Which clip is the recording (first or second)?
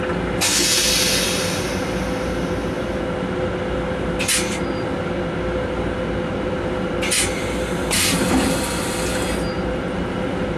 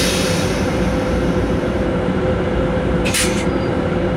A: first